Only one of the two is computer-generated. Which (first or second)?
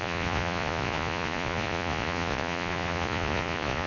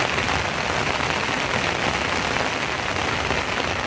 first